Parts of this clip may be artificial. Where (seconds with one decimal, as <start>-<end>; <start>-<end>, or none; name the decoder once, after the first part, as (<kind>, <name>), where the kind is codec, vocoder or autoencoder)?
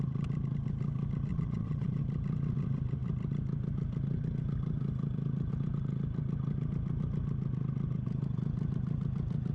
1.3-2.0 (vocoder, Vocos)